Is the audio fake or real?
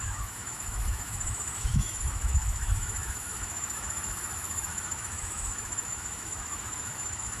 fake